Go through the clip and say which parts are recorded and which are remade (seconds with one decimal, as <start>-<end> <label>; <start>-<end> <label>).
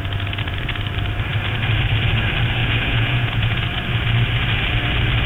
0.0-2.6 recorded; 2.6-3.6 remade; 3.6-5.3 recorded